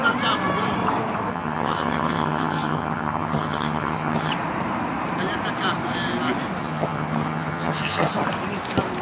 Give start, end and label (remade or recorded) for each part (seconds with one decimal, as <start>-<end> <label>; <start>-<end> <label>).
0.0-1.3 recorded; 1.3-4.3 remade; 4.3-6.6 recorded; 6.6-8.1 remade; 8.1-9.0 recorded